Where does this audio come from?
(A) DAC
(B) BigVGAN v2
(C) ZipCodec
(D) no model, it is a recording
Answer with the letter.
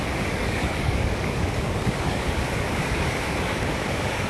A